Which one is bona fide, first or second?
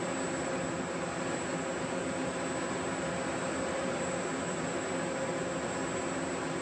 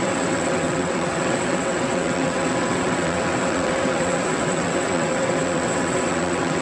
first